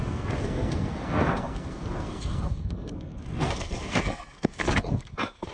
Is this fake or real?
fake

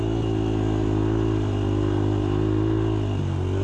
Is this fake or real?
real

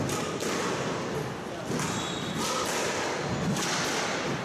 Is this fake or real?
real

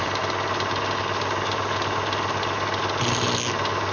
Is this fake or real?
real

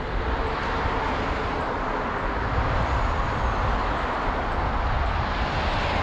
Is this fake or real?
real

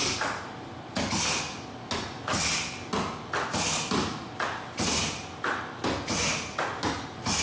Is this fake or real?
real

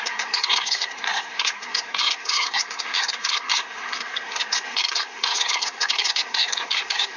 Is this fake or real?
fake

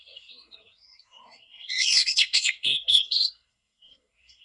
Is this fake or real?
fake